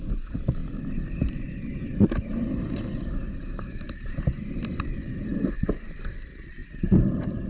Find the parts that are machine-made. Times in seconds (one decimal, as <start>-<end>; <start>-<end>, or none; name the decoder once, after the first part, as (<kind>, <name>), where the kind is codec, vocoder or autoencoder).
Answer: 0.0-0.6 (vocoder, BigVGAN v2); 4.6-6.6

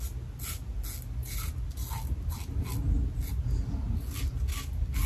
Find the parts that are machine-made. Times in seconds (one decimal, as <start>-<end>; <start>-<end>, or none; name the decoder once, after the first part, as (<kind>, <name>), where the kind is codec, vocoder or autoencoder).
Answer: none

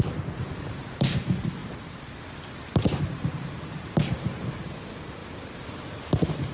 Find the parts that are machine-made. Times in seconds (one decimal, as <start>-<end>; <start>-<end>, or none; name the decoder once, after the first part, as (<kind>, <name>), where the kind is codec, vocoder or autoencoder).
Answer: 0.0-1.6 (vocoder, BigVGAN v2); 3.0-5.2

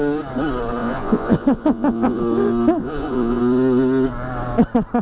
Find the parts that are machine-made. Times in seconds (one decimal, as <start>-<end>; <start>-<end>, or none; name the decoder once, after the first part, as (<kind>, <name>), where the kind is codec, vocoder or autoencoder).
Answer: 0.8-2.2 (vocoder, Vocos); 2.8-3.4

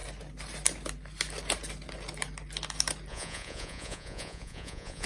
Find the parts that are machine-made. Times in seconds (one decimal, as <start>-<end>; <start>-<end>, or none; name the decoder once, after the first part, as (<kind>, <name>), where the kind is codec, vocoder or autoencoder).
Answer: 3.1-5.1 (vocoder, Vocos)

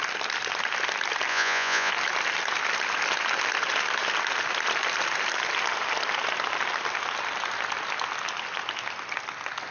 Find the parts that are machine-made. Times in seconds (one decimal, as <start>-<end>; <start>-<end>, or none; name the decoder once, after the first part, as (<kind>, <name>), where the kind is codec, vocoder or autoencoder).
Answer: 1.3-1.9 (vocoder, Vocos)

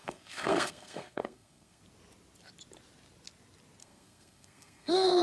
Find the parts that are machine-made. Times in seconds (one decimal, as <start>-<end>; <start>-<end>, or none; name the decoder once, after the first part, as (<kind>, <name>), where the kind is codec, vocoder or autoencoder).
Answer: 0.0-1.8 (codec, SNAC); 3.8-5.2